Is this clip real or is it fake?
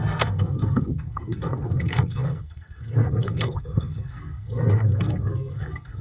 fake